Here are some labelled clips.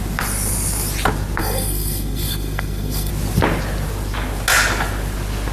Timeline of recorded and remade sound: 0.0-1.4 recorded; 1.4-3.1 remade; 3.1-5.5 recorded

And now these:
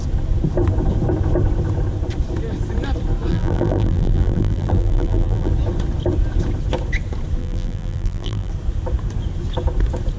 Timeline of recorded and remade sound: 0.0-3.3 recorded; 3.3-5.5 remade; 5.5-7.4 recorded; 7.4-8.5 remade; 8.5-10.2 recorded

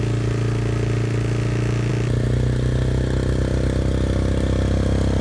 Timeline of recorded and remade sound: 0.0-5.2 recorded

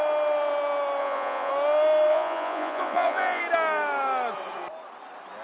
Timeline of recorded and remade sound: 0.0-1.0 recorded; 1.0-1.5 remade; 1.5-2.1 recorded; 2.1-3.4 remade; 3.4-5.4 recorded